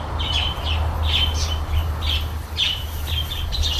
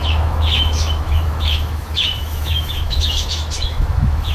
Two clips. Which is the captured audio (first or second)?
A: first